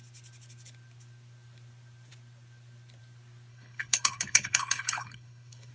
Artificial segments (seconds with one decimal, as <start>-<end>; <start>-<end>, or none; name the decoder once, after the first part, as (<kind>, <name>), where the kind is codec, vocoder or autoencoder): 3.5-5.7 (codec, HILCodec)